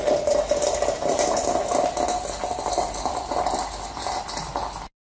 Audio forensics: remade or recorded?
recorded